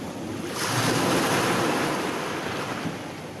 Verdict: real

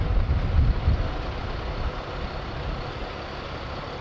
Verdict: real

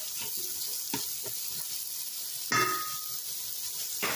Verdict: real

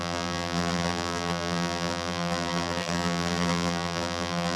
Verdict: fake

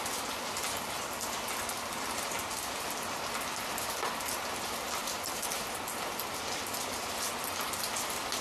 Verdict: real